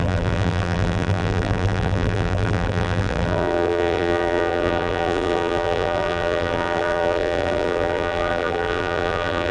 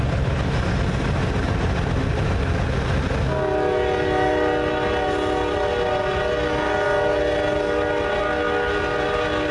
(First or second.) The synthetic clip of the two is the first